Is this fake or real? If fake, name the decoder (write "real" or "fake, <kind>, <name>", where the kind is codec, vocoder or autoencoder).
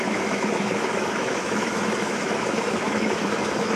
fake, autoencoder, DAC-VAE